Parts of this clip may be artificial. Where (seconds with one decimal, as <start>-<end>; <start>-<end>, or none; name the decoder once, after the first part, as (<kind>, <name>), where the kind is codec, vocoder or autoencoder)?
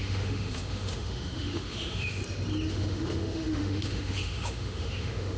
0.0-2.2 (autoencoder, DAC-VAE); 2.7-5.4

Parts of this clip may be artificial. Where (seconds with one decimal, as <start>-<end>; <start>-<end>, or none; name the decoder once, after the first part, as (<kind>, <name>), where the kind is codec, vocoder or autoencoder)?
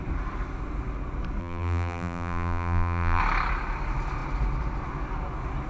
1.4-3.2 (vocoder, BigVGAN v2)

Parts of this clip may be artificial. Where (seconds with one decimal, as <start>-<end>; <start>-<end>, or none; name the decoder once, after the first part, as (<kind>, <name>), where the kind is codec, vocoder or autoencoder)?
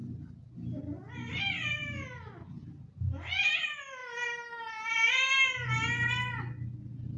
none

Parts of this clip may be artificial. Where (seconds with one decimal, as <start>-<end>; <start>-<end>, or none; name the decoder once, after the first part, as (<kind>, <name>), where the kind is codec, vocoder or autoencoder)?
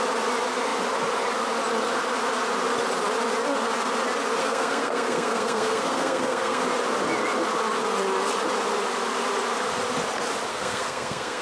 4.4-6.6 (codec, SNAC); 10.5-11.4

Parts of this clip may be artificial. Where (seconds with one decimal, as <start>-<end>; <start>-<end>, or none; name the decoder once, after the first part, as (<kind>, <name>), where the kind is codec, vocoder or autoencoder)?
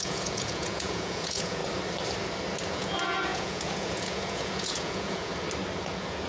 0.0-1.6 (vocoder, Vocos); 2.7-5.3; 5.8-6.3